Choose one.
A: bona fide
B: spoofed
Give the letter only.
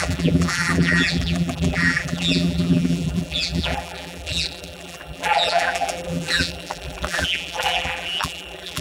B